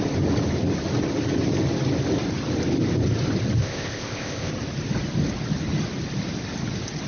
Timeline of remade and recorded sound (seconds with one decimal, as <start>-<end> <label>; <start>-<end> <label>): 0.0-3.6 recorded; 3.6-4.5 remade; 4.5-7.1 recorded